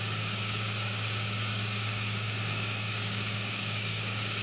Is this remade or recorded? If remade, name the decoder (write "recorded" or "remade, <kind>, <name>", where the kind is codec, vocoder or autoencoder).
remade, codec, DAC